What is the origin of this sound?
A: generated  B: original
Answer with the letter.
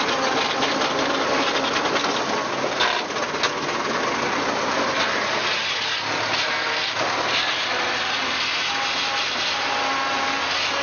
B